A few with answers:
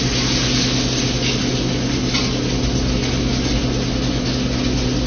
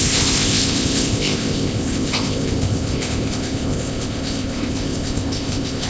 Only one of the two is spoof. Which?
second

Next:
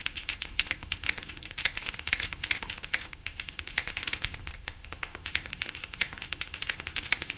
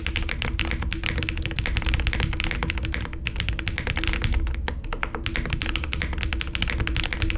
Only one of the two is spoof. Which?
first